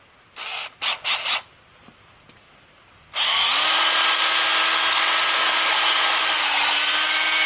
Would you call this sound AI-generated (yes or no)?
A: no